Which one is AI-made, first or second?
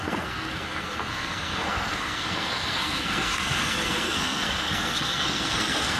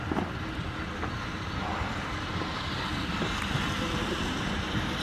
first